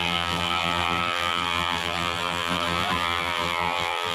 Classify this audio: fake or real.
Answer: fake